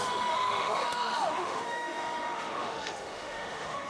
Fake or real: fake